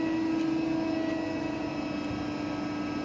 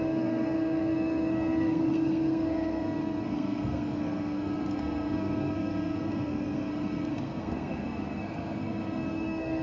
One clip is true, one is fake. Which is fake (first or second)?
second